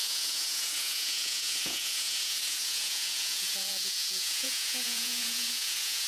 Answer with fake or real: fake